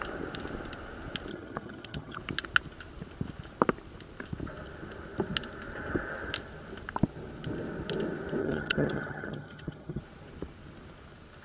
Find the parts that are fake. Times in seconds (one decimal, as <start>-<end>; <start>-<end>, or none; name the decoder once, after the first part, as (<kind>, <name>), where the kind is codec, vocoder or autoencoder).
1.3-2.2 (vocoder, HiFi-GAN); 8.4-10.0